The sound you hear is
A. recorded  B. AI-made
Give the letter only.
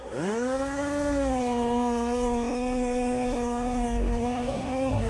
B